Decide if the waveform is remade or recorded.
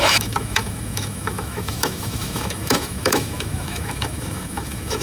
remade